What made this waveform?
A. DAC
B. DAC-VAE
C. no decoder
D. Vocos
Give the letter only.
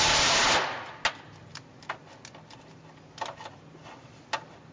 C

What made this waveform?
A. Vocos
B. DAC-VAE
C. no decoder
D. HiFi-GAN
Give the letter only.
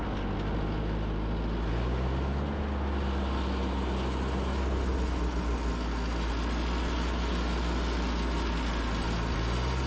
C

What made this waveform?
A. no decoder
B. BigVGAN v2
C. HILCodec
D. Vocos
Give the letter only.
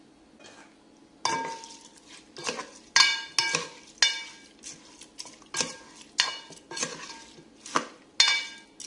A